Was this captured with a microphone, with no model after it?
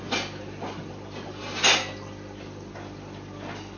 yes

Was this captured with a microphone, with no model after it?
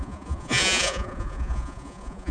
no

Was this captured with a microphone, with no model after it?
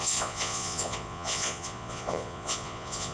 no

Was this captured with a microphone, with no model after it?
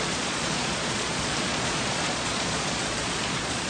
no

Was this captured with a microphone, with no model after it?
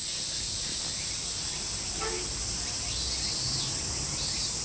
yes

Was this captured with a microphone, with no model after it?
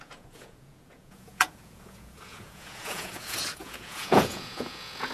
no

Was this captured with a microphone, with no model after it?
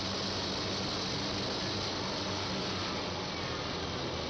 yes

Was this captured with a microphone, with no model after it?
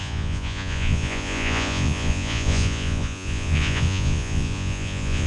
no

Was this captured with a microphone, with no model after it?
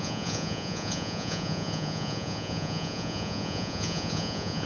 no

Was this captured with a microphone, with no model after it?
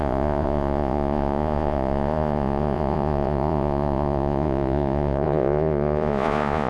no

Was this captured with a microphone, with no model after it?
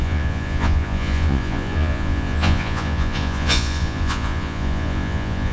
no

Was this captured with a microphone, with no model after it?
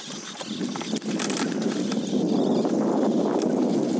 yes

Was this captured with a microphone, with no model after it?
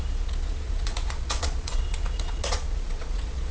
no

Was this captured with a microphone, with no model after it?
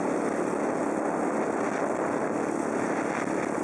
yes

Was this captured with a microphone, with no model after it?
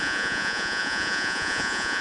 no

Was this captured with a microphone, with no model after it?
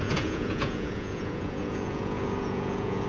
no